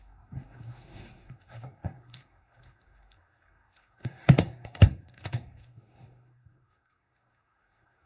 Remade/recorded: remade